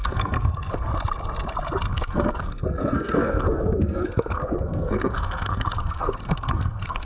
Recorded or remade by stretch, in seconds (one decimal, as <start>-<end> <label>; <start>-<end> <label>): 0.0-0.9 remade; 0.9-1.9 recorded; 1.9-7.0 remade